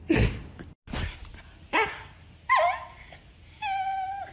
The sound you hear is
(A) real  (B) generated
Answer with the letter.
A